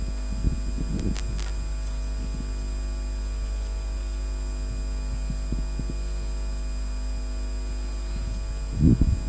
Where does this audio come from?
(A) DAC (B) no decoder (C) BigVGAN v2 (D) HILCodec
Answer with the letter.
B